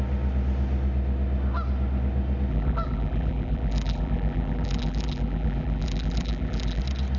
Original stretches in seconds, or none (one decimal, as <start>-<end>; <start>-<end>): 0.0-2.5; 6.8-7.2